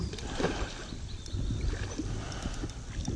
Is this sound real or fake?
real